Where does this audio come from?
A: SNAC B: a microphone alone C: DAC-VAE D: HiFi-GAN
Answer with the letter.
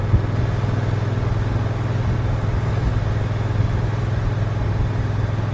B